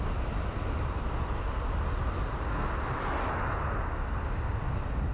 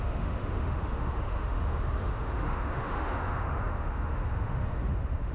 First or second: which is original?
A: first